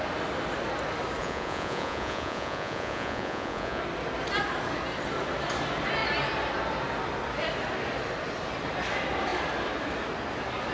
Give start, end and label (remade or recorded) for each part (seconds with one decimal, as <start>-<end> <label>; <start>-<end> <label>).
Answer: 0.0-1.2 recorded; 1.2-3.8 remade; 3.8-10.7 recorded